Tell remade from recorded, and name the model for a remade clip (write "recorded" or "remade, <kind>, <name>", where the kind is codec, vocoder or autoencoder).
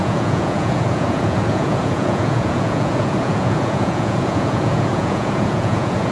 remade, vocoder, Vocos